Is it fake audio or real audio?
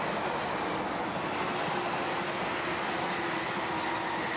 real